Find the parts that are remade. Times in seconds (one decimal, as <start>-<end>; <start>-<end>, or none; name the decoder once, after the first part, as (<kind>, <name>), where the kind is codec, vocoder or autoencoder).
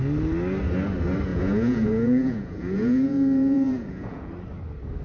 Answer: 1.3-4.3 (vocoder, Vocos)